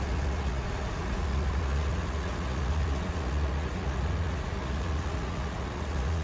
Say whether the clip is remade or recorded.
remade